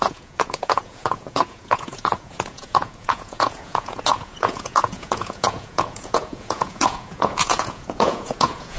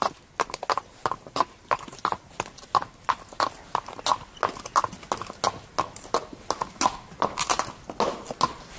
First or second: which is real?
second